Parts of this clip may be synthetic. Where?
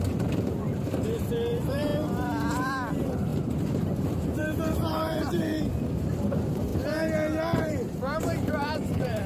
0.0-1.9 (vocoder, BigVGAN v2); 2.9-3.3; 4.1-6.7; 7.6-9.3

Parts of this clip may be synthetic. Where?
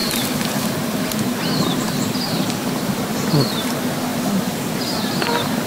0.0-1.0 (vocoder, BigVGAN v2); 1.7-3.0; 4.1-5.0